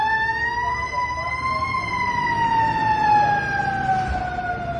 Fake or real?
real